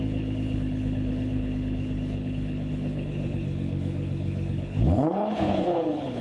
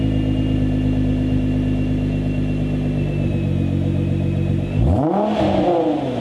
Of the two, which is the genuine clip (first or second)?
second